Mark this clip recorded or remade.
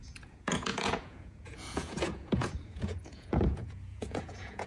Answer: remade